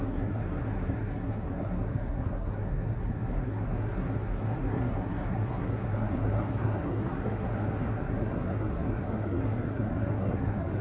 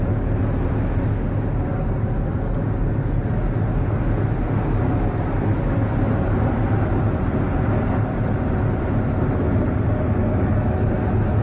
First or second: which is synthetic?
first